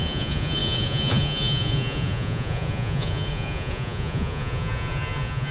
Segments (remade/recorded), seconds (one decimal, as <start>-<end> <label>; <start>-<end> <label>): 0.0-5.5 remade